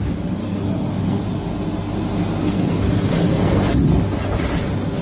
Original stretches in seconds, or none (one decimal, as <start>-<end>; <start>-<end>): 0.0-0.4; 1.2-2.4; 3.7-5.0